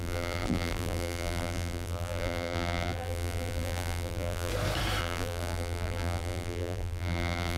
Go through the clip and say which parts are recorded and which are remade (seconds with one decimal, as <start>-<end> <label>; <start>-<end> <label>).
0.0-4.5 remade; 4.5-5.0 recorded; 5.0-7.6 remade